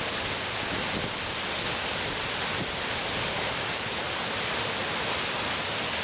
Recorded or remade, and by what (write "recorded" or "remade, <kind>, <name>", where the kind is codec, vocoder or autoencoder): recorded